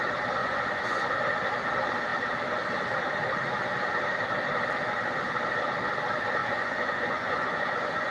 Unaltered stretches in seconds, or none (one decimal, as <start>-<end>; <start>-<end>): 0.0-0.4; 1.1-6.4